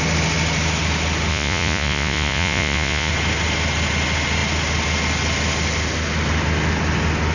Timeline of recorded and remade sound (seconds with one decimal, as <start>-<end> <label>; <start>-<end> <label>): 0.0-1.3 recorded; 1.3-3.1 remade; 3.1-7.3 recorded